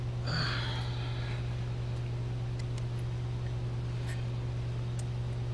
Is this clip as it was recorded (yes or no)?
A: yes